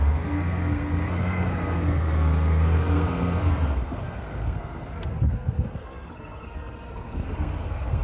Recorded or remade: remade